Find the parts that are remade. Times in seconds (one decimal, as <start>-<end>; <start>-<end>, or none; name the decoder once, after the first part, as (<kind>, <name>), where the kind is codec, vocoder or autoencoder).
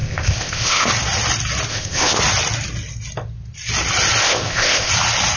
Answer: 0.0-0.9 (codec, ZipCodec); 1.7-2.2; 4.2-4.9